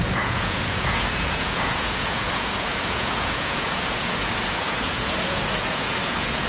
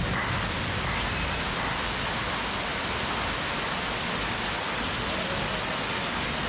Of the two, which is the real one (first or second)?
second